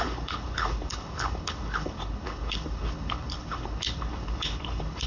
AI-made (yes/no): yes